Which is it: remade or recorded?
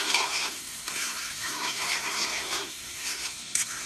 remade